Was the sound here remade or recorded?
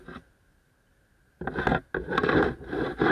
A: recorded